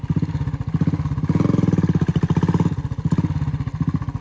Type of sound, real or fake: real